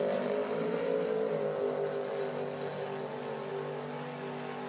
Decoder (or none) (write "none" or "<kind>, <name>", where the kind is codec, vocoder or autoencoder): none